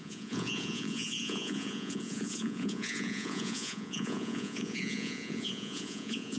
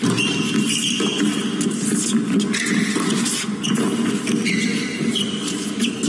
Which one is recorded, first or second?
second